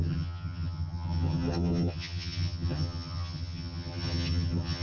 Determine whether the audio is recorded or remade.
remade